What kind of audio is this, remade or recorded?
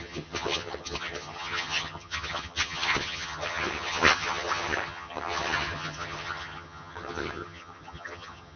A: remade